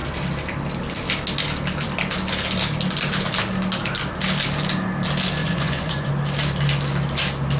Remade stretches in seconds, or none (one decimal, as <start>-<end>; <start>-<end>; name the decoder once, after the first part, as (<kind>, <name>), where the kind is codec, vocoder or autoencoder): 5.4-6.1 (vocoder, Vocos)